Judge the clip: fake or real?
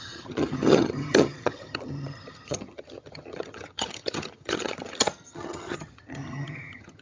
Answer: fake